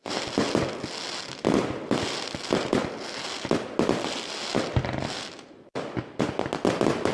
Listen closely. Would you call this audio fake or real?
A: real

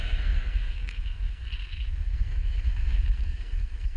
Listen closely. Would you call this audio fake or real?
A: fake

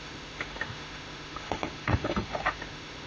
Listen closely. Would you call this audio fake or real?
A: fake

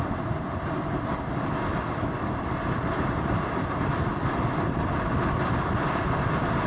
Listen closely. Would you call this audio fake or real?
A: real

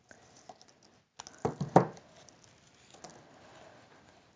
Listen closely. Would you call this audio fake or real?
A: real